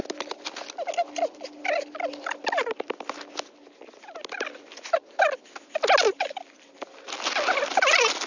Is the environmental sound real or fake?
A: real